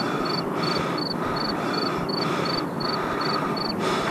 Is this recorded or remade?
remade